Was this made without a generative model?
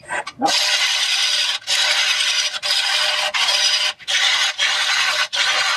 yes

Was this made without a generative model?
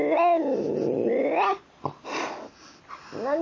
yes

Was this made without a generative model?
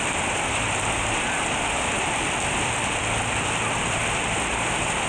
no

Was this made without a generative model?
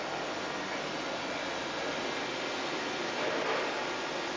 yes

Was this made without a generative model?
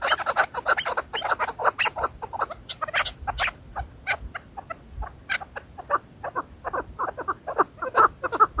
yes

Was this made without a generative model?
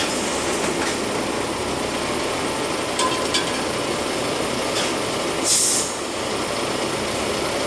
yes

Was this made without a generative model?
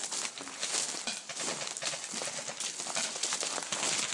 yes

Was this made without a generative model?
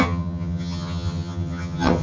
no